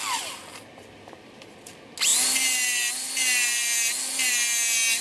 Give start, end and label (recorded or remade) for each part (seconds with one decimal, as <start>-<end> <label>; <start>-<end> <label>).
0.0-5.0 recorded